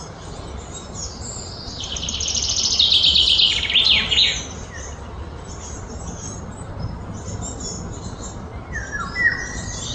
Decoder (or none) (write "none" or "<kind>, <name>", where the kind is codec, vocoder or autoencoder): none